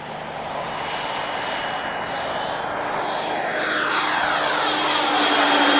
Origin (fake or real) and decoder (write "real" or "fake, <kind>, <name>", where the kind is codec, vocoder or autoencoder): real